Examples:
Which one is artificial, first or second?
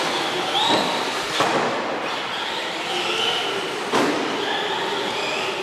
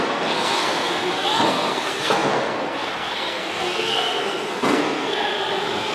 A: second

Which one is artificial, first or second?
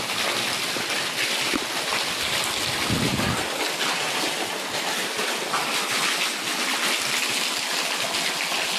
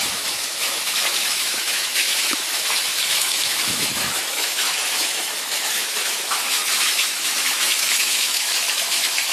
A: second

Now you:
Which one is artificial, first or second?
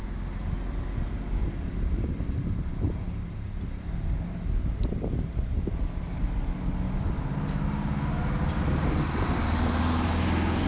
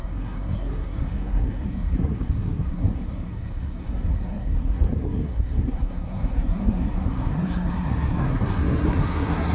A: second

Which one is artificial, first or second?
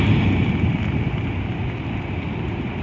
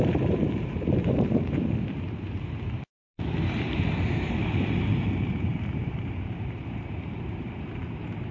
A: second